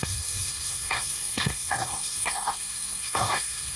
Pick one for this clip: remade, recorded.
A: remade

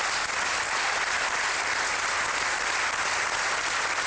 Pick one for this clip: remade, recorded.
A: recorded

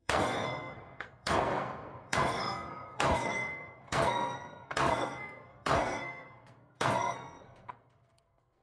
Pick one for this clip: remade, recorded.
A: remade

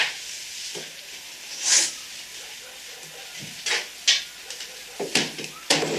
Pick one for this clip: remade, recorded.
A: recorded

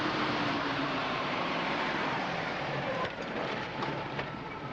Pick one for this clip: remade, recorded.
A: remade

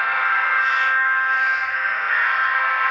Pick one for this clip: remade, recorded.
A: remade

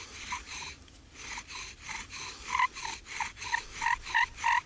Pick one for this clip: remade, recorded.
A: recorded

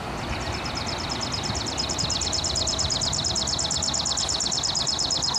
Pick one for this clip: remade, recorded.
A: recorded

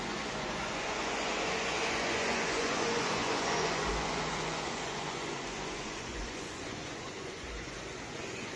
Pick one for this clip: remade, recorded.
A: remade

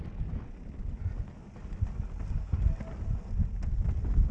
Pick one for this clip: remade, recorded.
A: recorded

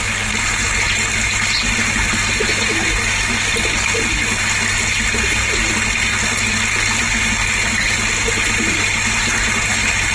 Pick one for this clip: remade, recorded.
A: recorded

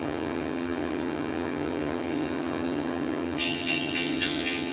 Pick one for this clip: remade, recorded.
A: remade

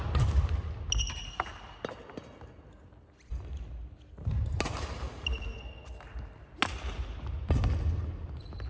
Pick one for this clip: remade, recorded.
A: recorded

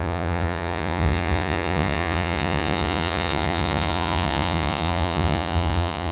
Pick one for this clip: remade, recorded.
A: remade